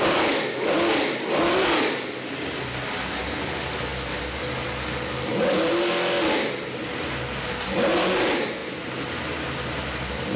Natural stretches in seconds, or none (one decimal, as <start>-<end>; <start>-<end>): 0.0-10.4